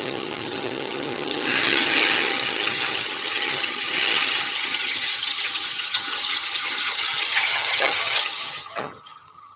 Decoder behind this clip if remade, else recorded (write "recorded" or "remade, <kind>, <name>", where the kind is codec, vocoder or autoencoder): remade, vocoder, HiFi-GAN